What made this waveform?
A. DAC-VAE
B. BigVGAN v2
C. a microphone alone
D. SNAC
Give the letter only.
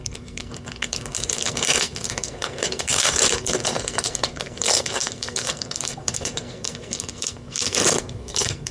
D